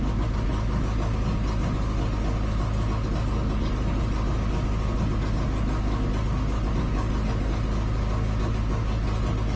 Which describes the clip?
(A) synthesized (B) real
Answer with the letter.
B